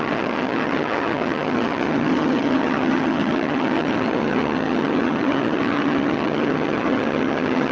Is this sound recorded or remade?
remade